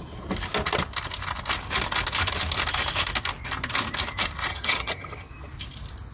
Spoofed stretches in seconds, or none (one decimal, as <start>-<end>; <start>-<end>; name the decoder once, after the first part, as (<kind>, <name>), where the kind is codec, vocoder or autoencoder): 4.5-5.3 (vocoder, HiFi-GAN)